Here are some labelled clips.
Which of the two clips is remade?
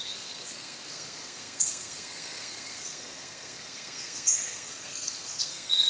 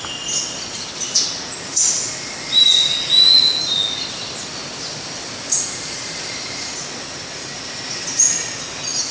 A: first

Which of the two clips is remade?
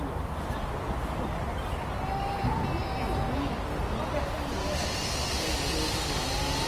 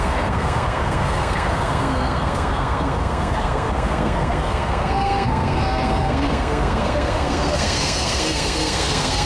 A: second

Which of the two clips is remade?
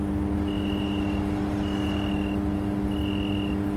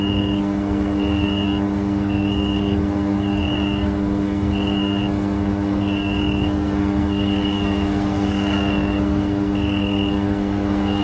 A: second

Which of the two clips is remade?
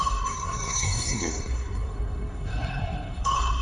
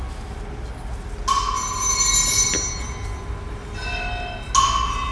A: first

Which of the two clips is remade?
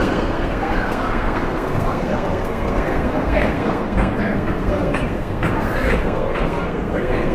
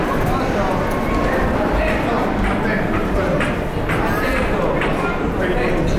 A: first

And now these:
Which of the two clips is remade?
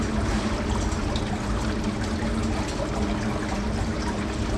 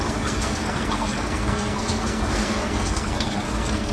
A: second